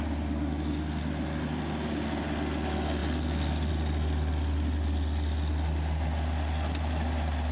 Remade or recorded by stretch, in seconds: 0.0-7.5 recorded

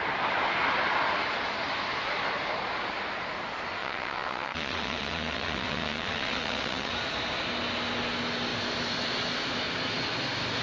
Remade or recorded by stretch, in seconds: 0.0-3.8 recorded; 3.8-6.9 remade; 6.9-10.6 recorded

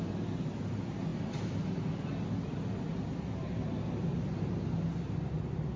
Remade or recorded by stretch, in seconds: 0.0-5.8 recorded